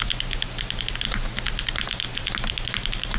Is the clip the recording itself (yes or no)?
no